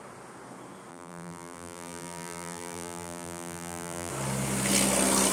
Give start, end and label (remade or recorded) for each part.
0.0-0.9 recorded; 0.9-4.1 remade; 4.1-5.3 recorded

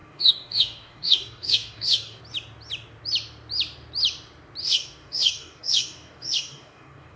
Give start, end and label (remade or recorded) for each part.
0.0-2.2 remade; 2.2-4.6 recorded; 4.6-7.2 remade

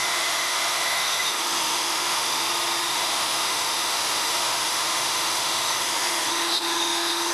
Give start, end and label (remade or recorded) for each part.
0.0-2.5 remade; 2.5-2.9 recorded; 2.9-7.3 remade

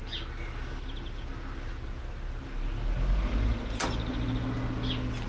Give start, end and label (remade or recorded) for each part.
0.0-5.3 recorded

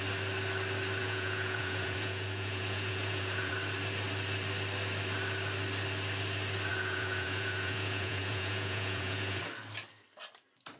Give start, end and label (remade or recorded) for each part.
0.0-1.0 recorded; 1.0-3.5 remade; 3.5-6.7 recorded; 6.7-9.4 remade; 9.4-10.8 recorded

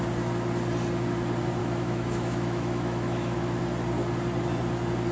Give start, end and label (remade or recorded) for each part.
0.0-1.6 recorded; 1.6-3.6 remade; 3.6-5.1 recorded